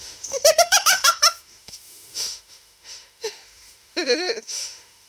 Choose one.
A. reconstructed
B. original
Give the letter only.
A